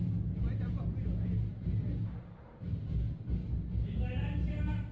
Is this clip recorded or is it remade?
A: recorded